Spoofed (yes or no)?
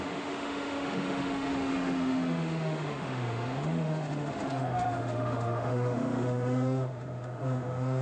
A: yes